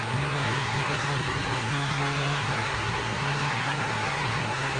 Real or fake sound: fake